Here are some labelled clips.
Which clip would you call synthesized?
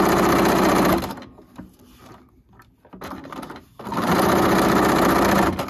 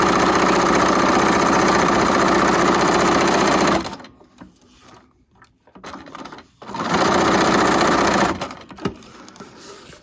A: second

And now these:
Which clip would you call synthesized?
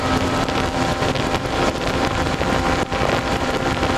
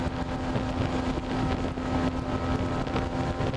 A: first